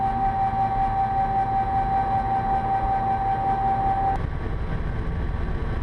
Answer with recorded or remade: recorded